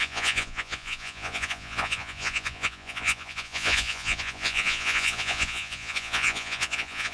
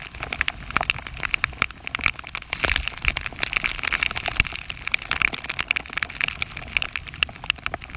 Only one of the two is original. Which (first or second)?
second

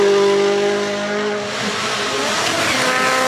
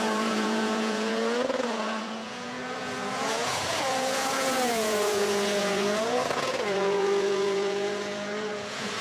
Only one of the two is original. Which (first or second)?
first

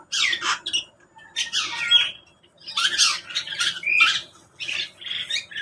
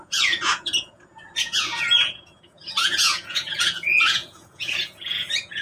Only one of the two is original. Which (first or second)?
first